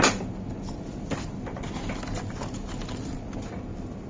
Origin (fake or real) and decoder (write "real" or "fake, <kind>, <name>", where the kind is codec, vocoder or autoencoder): real